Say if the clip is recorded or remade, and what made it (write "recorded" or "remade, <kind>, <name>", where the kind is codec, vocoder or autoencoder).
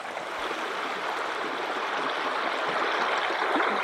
recorded